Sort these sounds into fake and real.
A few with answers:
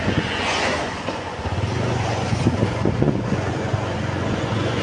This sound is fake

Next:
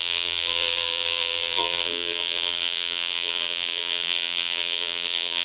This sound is fake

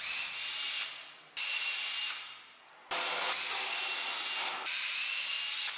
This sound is real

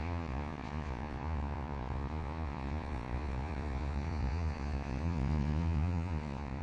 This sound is fake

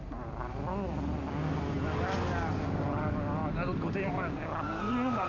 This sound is real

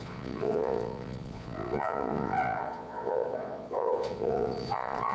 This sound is fake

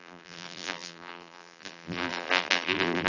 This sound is fake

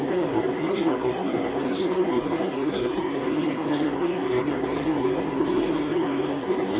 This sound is fake